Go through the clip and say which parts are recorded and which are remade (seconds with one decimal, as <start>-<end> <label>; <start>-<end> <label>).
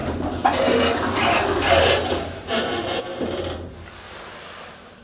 0.0-5.0 recorded